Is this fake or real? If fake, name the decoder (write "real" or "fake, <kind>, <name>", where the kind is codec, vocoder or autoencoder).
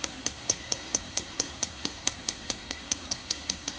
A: fake, codec, SNAC